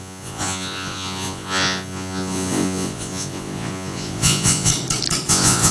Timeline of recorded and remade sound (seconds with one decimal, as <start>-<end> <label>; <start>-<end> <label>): 0.0-4.7 remade; 4.7-5.3 recorded; 5.3-5.7 remade